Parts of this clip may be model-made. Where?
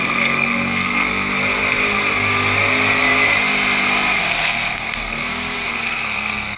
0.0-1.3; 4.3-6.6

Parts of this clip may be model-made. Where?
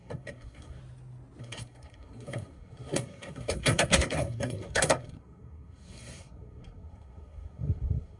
0.0-0.8; 1.4-8.2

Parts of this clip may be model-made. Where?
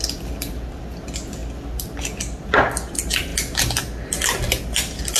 none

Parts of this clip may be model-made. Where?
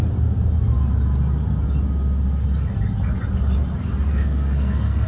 4.1-5.1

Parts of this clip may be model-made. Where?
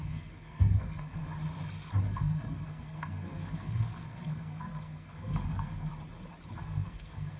0.0-1.2; 2.0-5.9; 6.6-7.4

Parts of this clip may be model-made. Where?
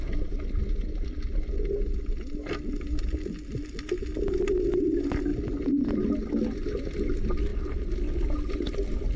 none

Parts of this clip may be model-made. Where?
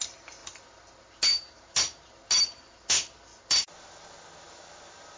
none